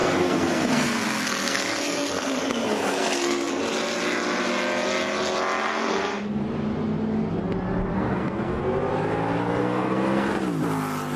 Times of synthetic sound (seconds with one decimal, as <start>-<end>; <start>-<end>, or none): 0.0-3.6; 5.6-6.4; 7.9-8.6; 9.6-10.3